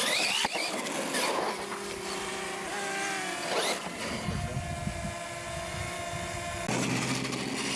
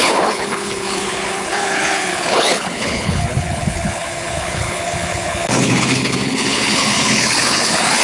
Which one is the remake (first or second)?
second